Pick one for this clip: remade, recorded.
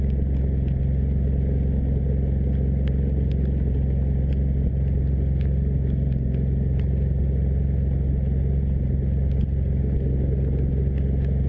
recorded